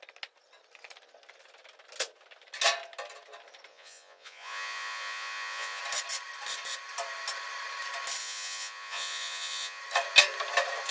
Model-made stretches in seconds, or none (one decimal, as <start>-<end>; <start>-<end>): 3.7-5.8; 8.2-9.8